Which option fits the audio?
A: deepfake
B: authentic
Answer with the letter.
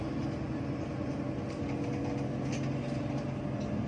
B